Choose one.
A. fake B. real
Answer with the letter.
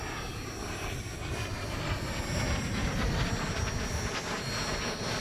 B